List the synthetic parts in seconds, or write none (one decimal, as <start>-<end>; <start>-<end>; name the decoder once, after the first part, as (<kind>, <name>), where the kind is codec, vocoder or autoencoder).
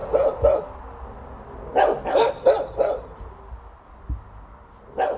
none